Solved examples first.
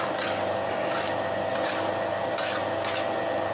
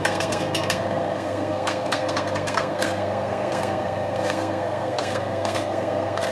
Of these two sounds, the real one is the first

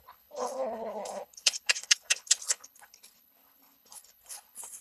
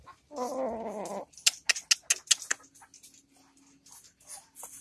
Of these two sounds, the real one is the second